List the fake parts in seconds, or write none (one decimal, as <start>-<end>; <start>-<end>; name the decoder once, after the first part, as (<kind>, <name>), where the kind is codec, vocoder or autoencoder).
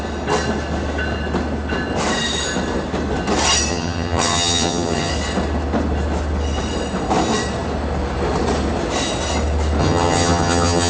3.7-5.1 (vocoder, HiFi-GAN); 9.8-10.9